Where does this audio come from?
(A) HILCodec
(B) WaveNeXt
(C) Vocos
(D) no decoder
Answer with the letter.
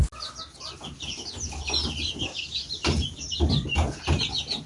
D